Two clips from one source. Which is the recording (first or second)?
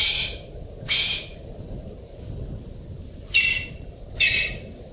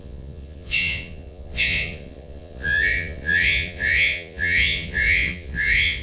first